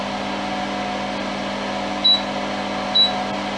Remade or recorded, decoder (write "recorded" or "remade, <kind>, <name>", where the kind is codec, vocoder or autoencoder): recorded